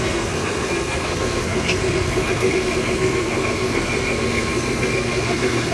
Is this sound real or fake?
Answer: fake